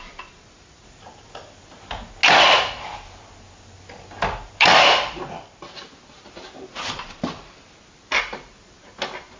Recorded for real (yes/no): yes